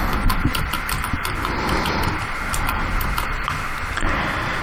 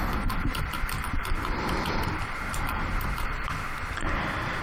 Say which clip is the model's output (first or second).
second